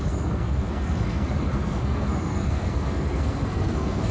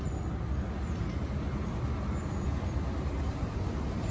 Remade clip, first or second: first